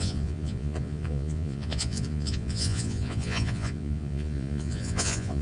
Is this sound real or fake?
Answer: fake